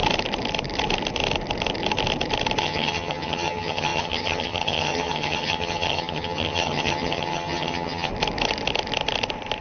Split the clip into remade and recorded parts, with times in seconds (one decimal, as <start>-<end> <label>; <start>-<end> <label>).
0.0-2.6 recorded; 2.6-8.1 remade; 8.1-9.6 recorded